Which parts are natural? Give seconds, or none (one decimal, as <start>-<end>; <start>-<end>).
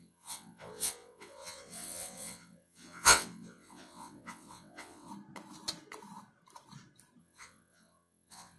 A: 5.1-7.2